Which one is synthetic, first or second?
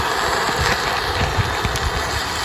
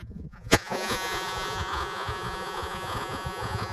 second